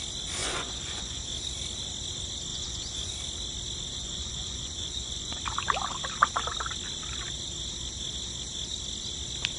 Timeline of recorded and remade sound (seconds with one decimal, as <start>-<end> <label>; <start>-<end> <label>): 0.0-0.4 recorded; 0.4-1.2 remade; 1.2-2.5 recorded; 2.5-3.1 remade; 3.1-3.9 recorded; 3.9-5.4 remade; 5.4-9.6 recorded